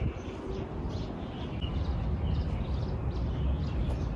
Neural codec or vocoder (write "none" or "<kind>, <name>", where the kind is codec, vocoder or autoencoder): none